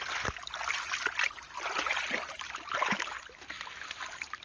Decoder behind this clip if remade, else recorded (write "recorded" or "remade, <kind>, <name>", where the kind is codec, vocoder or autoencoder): recorded